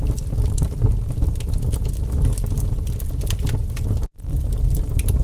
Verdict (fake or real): real